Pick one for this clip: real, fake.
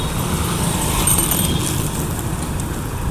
fake